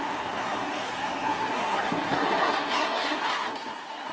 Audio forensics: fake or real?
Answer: fake